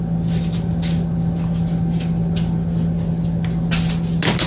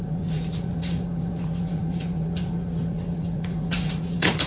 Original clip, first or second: first